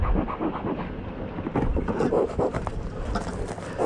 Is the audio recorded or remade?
remade